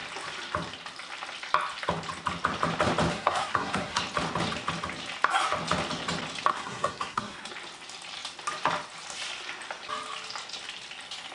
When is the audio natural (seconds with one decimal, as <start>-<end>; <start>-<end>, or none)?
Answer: 0.0-3.1; 4.0-6.5; 7.5-11.3